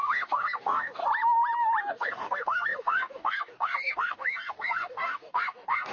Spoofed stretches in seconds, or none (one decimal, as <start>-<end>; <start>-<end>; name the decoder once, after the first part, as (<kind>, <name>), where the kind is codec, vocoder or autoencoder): 0.0-1.0 (codec, DAC); 1.8-5.9